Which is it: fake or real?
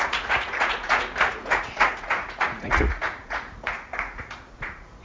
fake